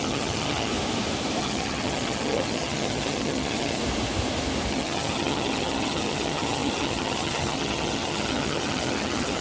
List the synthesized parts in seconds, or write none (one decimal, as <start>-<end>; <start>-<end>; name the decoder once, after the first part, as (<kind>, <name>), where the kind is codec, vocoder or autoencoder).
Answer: 0.0-0.7 (vocoder, HiFi-GAN); 1.4-3.8; 4.7-9.4